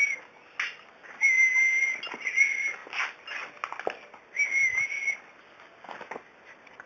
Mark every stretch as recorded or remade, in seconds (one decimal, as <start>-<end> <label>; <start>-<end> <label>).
0.0-6.9 recorded